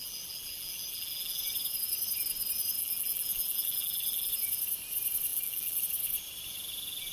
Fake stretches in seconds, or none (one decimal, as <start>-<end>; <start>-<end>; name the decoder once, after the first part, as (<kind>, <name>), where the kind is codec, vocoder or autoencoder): 0.0-1.4 (vocoder, BigVGAN v2); 2.8-4.3; 5.3-5.8